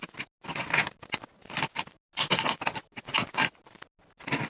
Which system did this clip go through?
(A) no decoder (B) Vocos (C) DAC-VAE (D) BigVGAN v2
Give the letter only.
A